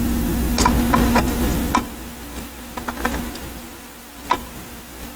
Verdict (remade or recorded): recorded